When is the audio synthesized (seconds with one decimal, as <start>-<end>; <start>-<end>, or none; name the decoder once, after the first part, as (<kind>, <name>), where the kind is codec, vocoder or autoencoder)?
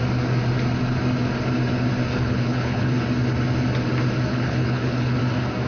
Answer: 2.1-2.9 (codec, HILCodec); 4.3-5.2